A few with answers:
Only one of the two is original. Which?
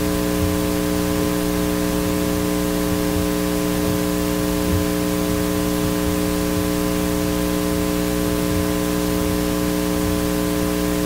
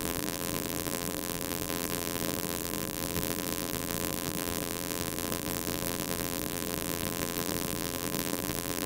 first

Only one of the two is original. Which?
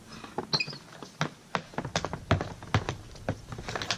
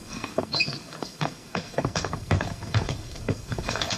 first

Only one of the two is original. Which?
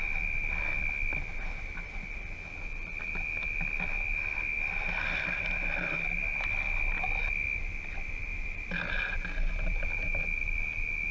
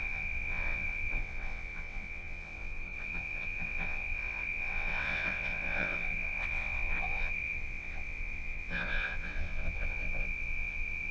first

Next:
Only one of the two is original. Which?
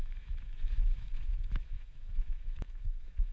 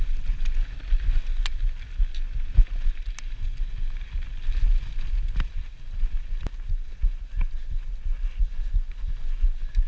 second